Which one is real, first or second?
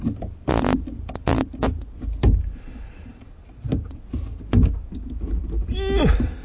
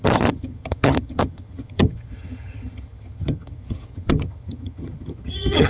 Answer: first